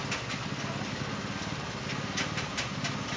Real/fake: real